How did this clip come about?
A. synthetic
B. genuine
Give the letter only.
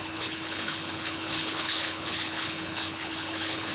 A